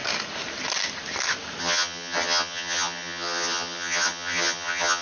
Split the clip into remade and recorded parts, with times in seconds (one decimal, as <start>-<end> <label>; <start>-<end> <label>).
0.0-1.6 recorded; 1.6-5.0 remade